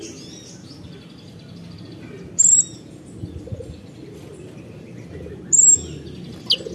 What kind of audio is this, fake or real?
real